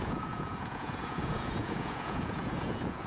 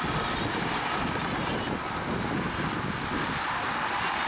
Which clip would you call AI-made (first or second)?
first